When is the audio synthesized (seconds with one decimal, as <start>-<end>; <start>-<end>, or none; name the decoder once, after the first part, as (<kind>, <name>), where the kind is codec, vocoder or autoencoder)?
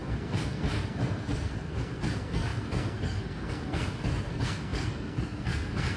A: 0.0-6.0 (codec, SNAC)